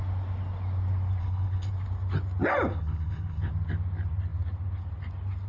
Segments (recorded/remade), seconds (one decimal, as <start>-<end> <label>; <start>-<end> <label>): 0.0-1.2 recorded; 1.2-1.7 remade; 1.7-2.7 recorded; 2.7-3.5 remade; 3.5-5.5 recorded